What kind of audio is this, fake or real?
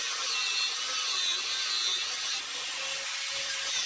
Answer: real